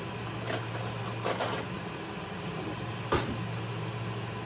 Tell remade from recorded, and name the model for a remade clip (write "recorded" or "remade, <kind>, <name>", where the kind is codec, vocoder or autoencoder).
recorded